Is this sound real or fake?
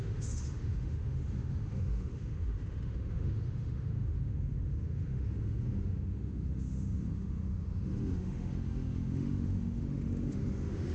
fake